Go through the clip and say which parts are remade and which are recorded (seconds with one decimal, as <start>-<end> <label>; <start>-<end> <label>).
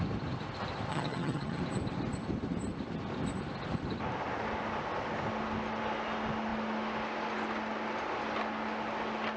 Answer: 0.0-0.9 recorded; 0.9-1.6 remade; 1.6-9.4 recorded